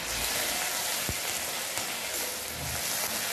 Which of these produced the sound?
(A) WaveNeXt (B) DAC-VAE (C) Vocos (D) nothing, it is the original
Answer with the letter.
D